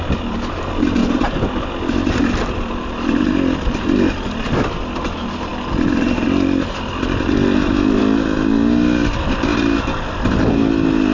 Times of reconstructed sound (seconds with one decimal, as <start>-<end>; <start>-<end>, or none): none